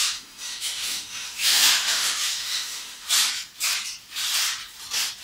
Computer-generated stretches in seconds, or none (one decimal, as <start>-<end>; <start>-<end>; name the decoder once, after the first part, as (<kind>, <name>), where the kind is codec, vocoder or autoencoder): 0.0-3.1 (autoencoder, DAC-VAE)